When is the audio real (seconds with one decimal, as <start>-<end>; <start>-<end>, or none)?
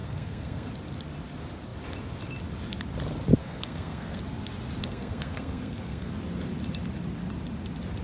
0.7-3.4; 4.2-4.8; 6.1-8.0